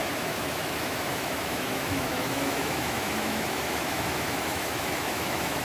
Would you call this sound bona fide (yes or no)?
no